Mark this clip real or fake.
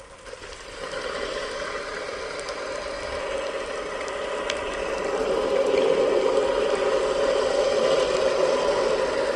real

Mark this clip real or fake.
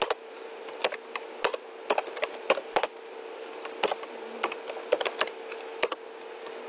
real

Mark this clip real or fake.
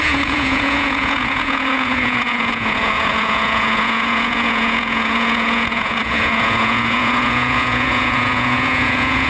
fake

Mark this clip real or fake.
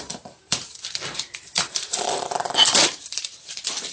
fake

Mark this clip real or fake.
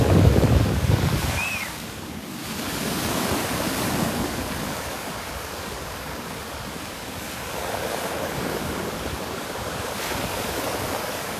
fake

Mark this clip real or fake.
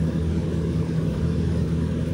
fake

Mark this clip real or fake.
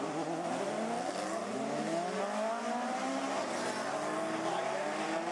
real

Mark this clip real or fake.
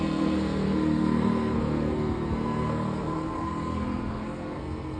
fake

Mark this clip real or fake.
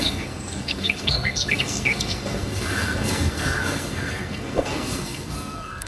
fake